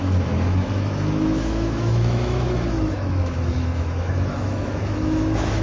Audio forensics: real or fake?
fake